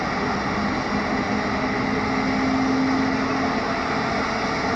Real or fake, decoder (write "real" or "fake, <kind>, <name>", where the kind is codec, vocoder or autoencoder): real